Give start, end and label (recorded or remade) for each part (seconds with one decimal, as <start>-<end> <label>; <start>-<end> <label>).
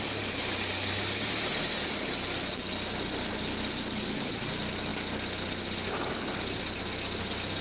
0.0-7.6 recorded